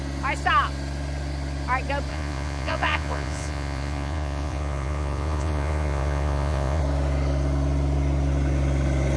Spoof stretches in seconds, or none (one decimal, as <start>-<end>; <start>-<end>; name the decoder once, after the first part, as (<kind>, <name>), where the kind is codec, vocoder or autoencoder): 2.1-6.8 (vocoder, Vocos)